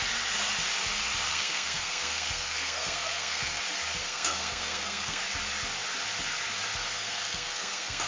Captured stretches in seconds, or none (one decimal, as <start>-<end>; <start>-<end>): 0.0-1.3; 3.6-4.0; 5.2-6.8